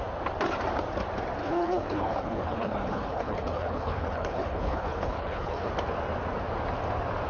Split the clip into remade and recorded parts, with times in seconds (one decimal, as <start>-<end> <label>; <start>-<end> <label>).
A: 0.0-1.4 recorded; 1.4-5.7 remade; 5.7-7.3 recorded